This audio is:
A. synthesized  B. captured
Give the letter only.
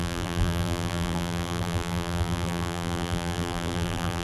A